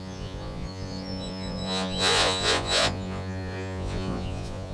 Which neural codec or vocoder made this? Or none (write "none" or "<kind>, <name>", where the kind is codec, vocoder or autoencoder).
vocoder, Vocos